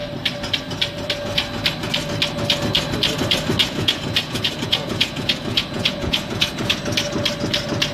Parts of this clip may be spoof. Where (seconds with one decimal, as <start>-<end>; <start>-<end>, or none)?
3.6-6.8